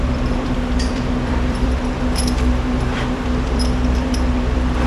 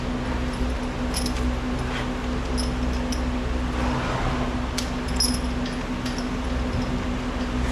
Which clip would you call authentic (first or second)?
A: second